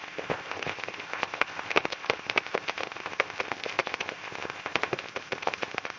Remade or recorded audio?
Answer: remade